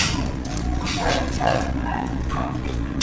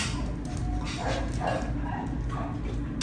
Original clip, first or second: second